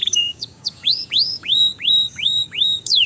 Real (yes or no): no